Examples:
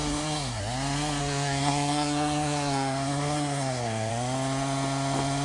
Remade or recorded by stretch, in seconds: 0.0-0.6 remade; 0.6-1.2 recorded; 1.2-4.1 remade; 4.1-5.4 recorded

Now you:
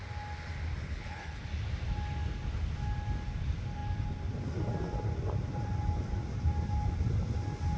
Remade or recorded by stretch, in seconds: 0.0-0.8 recorded; 0.8-1.4 remade; 1.4-7.8 recorded

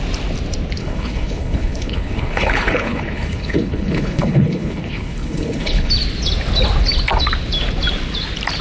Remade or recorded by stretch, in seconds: 0.0-0.8 recorded; 0.8-5.9 remade; 5.9-8.6 recorded

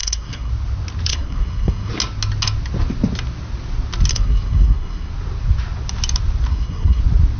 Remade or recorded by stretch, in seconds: 0.0-0.5 remade; 0.5-1.1 recorded; 1.1-1.9 remade; 1.9-4.1 recorded; 4.1-5.1 remade; 5.1-6.5 recorded; 6.5-7.0 remade; 7.0-7.4 recorded

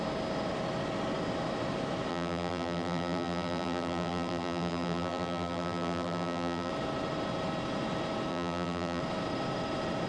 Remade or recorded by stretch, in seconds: 0.0-2.1 recorded; 2.1-6.7 remade; 6.7-8.3 recorded; 8.3-9.0 remade; 9.0-10.1 recorded